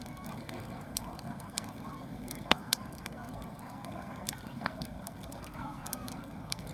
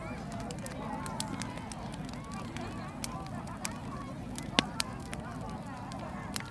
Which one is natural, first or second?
second